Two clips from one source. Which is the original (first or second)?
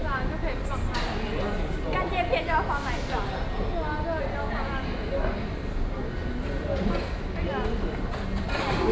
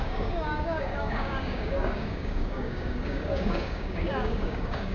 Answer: first